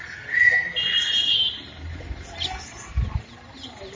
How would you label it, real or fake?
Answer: real